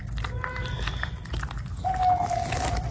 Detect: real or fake real